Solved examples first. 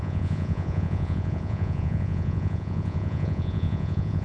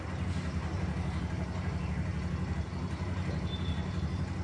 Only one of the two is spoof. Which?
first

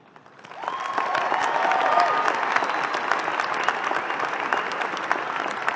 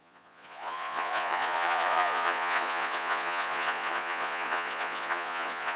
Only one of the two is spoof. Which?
second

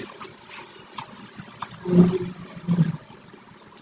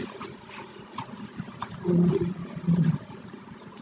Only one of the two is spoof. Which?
second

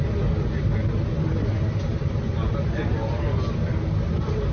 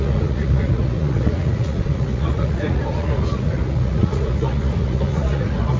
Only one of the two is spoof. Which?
second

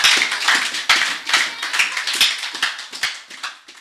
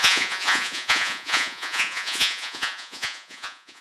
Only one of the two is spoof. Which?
second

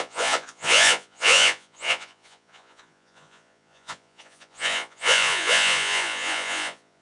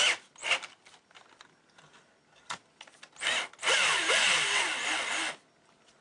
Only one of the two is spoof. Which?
first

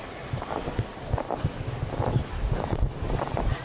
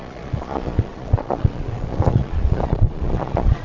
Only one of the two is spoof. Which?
second